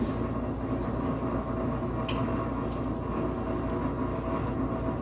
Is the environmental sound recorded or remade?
recorded